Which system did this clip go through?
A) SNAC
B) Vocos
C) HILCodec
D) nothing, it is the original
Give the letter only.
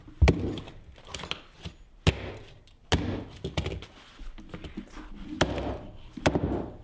D